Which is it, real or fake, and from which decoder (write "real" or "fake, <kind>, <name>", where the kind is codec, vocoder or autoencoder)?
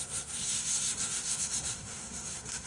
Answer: fake, codec, SNAC